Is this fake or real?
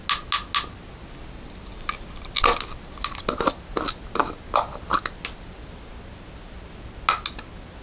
real